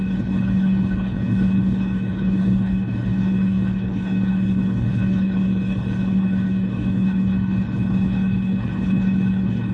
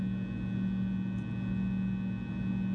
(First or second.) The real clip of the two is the second